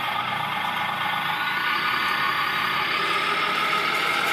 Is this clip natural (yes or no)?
yes